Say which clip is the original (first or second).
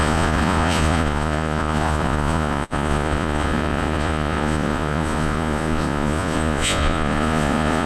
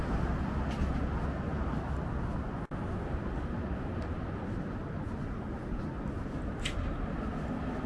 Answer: second